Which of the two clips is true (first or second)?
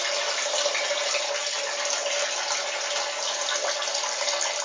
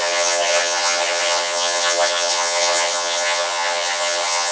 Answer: first